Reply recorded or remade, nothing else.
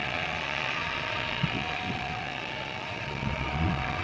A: remade